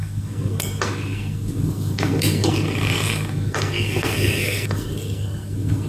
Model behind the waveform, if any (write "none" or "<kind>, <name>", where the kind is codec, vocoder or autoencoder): codec, SNAC